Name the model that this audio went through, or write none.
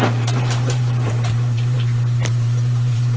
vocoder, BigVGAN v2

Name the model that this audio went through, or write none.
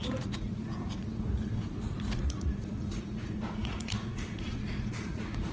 vocoder, Vocos